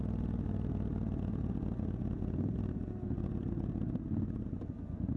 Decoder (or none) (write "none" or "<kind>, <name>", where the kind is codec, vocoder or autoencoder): none